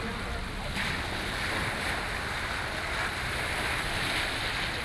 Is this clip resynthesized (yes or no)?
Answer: no